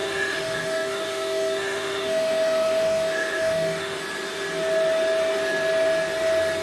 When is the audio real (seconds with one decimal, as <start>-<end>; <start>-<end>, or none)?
4.0-6.6